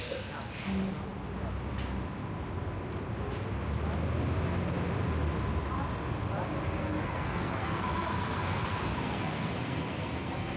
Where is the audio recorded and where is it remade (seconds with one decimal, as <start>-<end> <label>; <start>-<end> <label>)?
0.0-6.8 recorded; 6.8-10.6 remade